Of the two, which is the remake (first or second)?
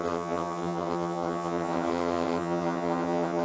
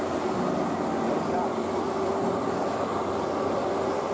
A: first